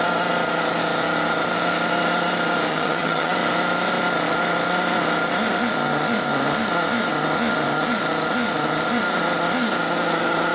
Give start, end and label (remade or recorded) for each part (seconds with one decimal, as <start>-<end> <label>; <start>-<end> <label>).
0.0-2.7 recorded; 2.7-3.3 remade; 3.3-10.5 recorded